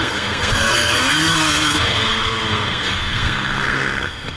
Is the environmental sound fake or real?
fake